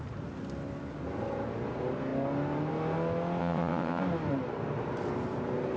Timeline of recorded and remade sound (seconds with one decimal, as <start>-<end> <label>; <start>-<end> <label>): 0.0-3.4 recorded; 3.4-4.0 remade; 4.0-5.8 recorded

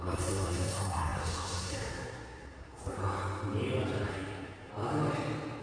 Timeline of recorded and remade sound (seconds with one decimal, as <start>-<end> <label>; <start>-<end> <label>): 0.0-3.0 remade; 3.0-4.1 recorded; 4.1-4.7 remade; 4.7-5.6 recorded

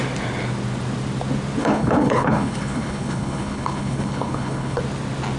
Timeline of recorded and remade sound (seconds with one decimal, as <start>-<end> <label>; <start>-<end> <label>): 0.0-1.6 recorded; 1.6-4.8 remade; 4.8-5.4 recorded

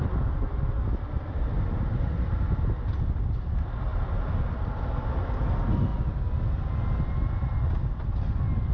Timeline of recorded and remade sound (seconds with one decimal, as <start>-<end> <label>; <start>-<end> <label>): 0.0-8.7 recorded

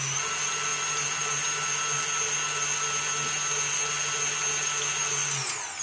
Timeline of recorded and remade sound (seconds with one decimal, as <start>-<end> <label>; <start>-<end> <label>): 0.0-5.8 recorded

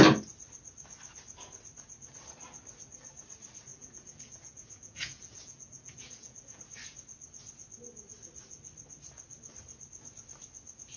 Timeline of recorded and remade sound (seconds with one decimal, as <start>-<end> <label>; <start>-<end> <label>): 0.0-3.7 recorded; 3.7-6.6 remade; 6.6-11.0 recorded

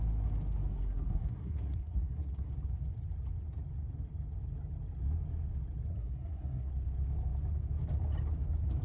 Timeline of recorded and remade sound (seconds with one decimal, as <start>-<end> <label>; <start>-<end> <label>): 0.0-0.7 recorded; 0.7-2.5 remade; 2.5-5.9 recorded; 5.9-6.7 remade; 6.7-8.8 recorded